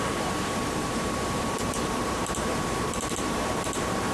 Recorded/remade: remade